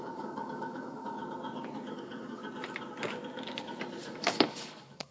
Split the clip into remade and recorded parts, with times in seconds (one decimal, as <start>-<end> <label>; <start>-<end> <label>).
0.0-1.2 remade; 1.2-1.9 recorded; 1.9-2.4 remade; 2.4-4.1 recorded; 4.1-5.1 remade